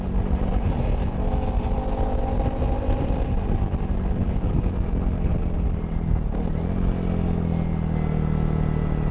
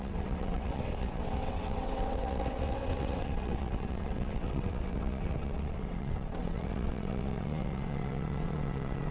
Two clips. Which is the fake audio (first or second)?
second